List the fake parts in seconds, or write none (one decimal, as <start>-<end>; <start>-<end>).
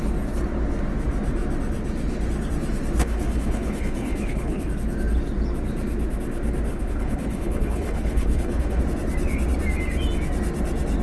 3.0-4.7; 6.7-8.8